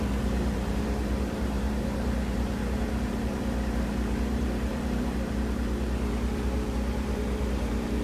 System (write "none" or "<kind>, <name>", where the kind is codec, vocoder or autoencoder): vocoder, BigVGAN v2